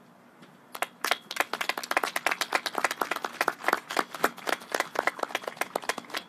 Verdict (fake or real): real